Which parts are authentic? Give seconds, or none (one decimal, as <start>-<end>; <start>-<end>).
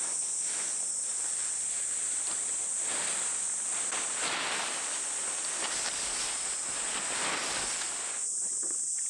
0.0-9.1